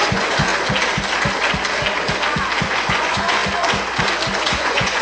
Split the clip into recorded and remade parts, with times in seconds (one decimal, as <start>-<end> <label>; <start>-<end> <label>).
0.0-0.5 remade; 0.5-2.6 recorded; 2.6-3.4 remade; 3.4-4.4 recorded; 4.4-5.0 remade